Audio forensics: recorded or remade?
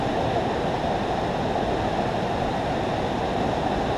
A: recorded